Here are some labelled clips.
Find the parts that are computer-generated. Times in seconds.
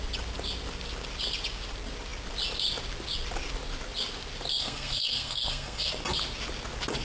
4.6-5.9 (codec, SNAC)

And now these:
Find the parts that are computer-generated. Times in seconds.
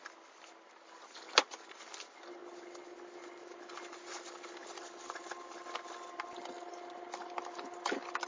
none